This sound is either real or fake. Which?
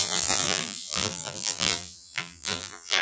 fake